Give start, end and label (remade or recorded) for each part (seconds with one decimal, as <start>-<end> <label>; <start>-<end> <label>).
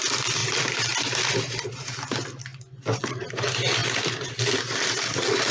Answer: 0.0-5.5 recorded